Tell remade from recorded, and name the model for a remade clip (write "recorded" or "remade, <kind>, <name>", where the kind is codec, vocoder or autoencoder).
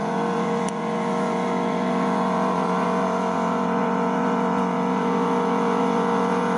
remade, vocoder, Vocos